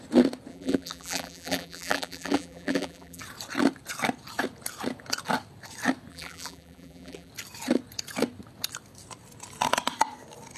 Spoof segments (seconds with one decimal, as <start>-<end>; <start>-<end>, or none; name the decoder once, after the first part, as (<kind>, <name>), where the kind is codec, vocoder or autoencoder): 0.5-3.2 (vocoder, BigVGAN v2); 6.1-7.3

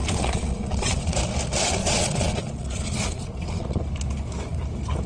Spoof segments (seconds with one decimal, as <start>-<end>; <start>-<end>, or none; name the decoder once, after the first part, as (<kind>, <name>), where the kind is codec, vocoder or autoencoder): 0.0-1.2 (vocoder, Vocos); 1.8-3.8

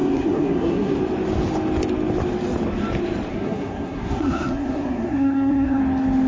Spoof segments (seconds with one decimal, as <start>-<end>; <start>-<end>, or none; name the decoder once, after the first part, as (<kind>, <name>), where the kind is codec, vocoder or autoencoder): 0.0-1.0 (codec, SNAC); 3.3-5.8

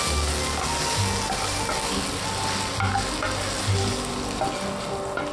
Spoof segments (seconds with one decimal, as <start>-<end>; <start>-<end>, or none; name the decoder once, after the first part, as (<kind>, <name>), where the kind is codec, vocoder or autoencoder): none

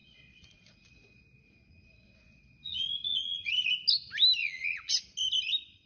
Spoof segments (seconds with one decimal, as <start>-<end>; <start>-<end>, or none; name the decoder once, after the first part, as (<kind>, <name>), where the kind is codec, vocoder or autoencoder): 0.0-3.5 (vocoder, Vocos); 4.4-5.0

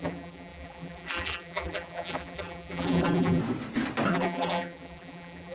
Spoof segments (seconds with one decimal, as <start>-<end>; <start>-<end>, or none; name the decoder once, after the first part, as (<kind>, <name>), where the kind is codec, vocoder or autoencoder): 0.0-3.4 (vocoder, BigVGAN v2); 4.1-5.5